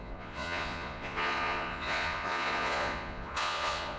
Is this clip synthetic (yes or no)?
yes